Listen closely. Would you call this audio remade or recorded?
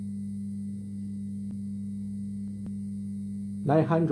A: recorded